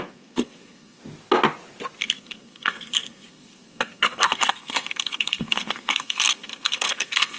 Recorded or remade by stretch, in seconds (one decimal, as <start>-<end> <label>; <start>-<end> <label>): 0.0-1.0 remade; 1.0-2.0 recorded; 2.0-7.4 remade